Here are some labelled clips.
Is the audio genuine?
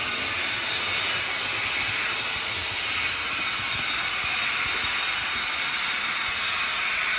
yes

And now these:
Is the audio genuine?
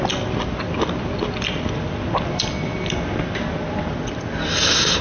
yes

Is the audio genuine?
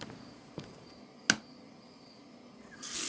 yes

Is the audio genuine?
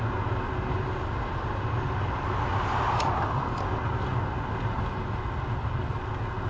yes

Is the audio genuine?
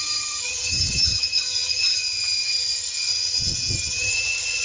no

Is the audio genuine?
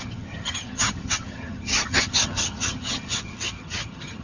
no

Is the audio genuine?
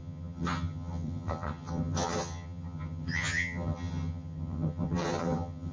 no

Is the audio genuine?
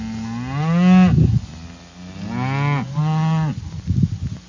yes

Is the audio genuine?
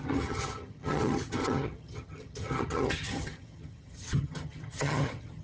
no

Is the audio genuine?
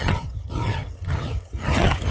no